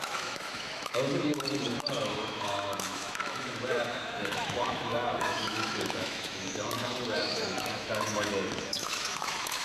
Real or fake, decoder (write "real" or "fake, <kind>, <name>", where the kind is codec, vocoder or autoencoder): fake, autoencoder, DAC-VAE